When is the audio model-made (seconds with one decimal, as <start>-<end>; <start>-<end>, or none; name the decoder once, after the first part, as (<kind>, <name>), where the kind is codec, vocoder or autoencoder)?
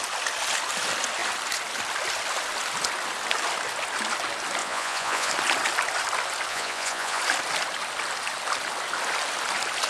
4.6-5.3 (vocoder, Vocos); 6.5-7.2